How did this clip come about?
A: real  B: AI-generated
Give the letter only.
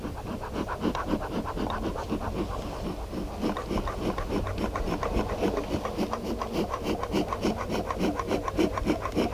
A